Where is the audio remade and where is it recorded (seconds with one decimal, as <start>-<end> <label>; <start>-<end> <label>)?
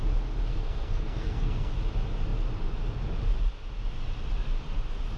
0.0-0.5 recorded; 0.5-1.7 remade; 1.7-5.2 recorded